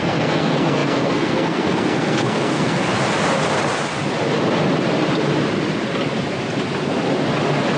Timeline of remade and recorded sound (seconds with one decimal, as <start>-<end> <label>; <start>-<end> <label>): 0.0-2.9 remade; 2.9-7.8 recorded